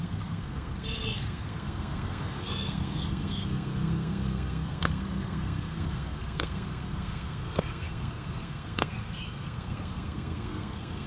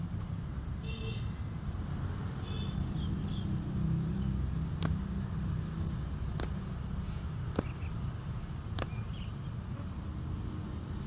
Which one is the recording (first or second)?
second